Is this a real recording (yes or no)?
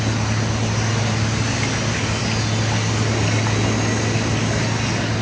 yes